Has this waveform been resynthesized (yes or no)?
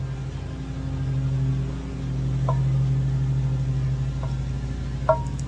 no